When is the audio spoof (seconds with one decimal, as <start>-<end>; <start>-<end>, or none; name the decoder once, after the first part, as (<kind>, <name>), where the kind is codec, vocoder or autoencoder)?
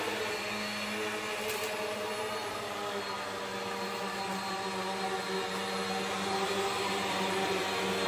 2.5-3.0 (codec, DAC)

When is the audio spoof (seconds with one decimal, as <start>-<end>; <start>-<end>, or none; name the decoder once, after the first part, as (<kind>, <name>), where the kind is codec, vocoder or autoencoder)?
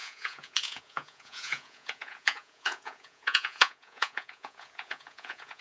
0.0-5.6 (vocoder, Vocos)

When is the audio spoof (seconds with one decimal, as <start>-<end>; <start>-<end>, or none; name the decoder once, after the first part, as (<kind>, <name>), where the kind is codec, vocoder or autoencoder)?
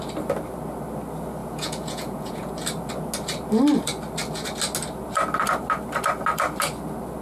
1.4-2.5 (vocoder, Vocos)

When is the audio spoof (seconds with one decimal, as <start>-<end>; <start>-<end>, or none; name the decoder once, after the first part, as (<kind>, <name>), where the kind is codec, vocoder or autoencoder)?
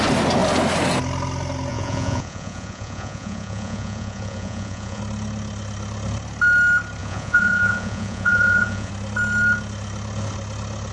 1.7-5.0 (vocoder, Vocos); 7.0-8.9